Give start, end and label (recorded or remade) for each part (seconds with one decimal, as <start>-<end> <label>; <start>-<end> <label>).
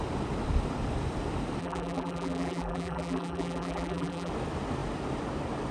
0.0-1.6 recorded; 1.6-4.3 remade; 4.3-5.7 recorded